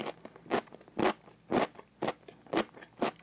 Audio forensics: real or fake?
real